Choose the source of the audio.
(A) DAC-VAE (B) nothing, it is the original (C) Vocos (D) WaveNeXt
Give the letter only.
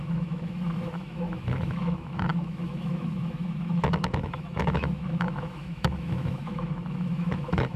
A